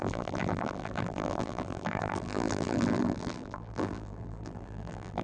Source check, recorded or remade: remade